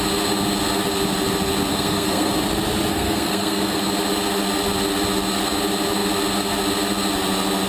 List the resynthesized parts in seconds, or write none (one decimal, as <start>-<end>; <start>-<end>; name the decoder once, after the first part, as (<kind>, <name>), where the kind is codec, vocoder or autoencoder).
1.7-2.3 (codec, SNAC); 2.9-3.8